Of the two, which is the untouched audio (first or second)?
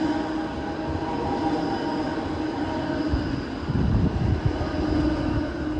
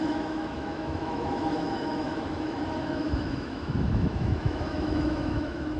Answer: first